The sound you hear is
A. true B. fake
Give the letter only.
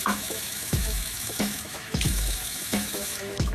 B